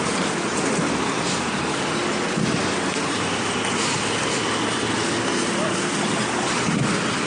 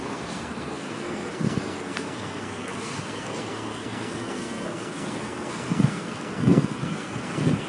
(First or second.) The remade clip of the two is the second